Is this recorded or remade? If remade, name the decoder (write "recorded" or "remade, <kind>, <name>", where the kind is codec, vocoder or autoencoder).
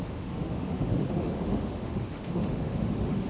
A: remade, autoencoder, DAC-VAE